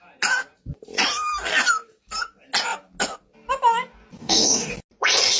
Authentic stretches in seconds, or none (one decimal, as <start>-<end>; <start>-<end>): 0.0-4.2; 4.7-5.4